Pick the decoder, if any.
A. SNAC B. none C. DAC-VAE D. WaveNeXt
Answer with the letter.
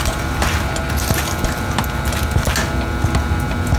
B